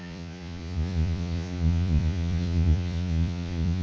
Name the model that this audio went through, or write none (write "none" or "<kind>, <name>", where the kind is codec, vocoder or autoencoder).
vocoder, Vocos